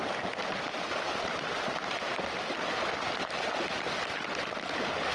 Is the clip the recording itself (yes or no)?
yes